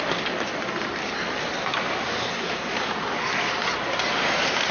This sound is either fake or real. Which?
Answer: real